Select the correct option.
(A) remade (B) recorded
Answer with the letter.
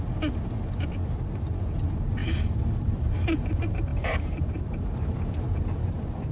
A